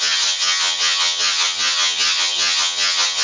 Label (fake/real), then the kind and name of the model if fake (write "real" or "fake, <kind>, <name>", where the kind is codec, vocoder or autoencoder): fake, vocoder, HiFi-GAN